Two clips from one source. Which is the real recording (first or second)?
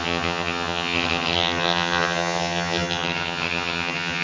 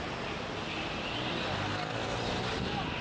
second